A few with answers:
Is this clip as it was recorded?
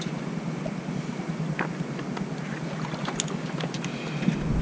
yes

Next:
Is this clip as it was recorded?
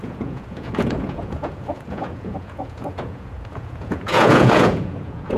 no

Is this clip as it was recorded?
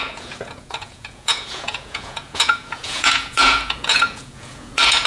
no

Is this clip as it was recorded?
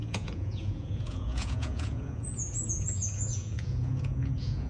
no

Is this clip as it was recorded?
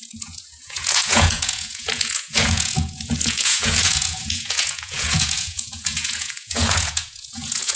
no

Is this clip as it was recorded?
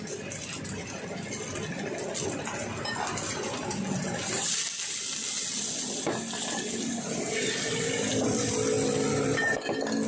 yes